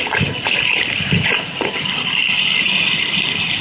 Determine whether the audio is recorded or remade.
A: recorded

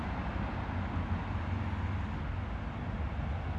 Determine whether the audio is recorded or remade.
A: recorded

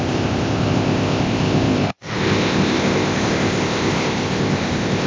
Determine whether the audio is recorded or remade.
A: remade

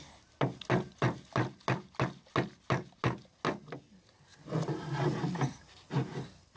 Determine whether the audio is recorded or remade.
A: recorded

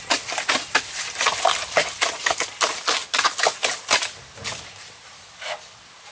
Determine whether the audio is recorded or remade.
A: recorded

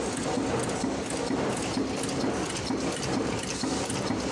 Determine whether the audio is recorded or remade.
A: recorded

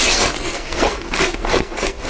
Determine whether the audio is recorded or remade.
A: remade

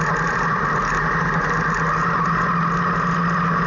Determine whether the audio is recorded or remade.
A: recorded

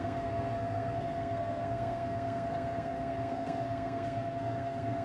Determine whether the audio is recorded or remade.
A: remade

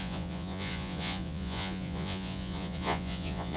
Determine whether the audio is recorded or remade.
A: remade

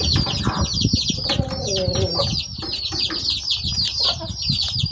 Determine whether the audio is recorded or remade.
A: recorded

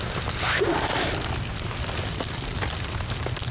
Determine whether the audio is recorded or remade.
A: recorded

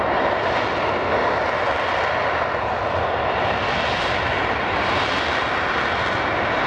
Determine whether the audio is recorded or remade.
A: recorded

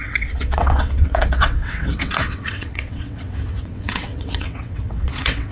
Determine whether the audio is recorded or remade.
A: remade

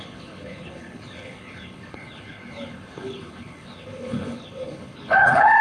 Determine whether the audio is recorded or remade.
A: remade